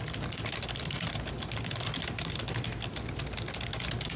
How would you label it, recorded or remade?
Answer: recorded